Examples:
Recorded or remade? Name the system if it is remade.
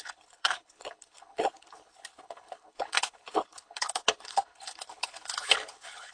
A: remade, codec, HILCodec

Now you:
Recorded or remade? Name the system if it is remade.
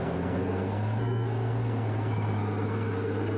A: remade, codec, SNAC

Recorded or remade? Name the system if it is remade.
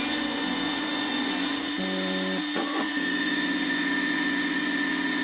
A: remade, vocoder, Vocos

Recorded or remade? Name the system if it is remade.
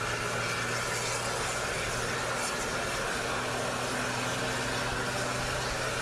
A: recorded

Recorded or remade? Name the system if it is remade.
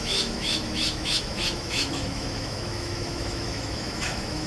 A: remade, autoencoder, DAC-VAE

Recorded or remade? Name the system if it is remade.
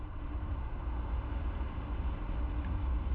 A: recorded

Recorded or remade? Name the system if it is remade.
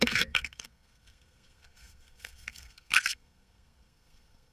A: remade, codec, SNAC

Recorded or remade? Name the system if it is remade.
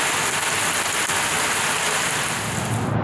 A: recorded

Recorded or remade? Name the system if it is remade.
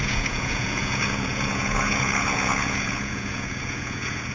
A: remade, vocoder, Vocos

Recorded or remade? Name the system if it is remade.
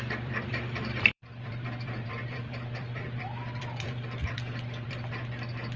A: remade, vocoder, BigVGAN v2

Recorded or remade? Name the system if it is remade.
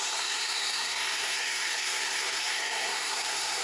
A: remade, codec, SNAC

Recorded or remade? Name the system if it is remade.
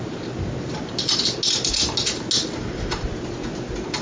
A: recorded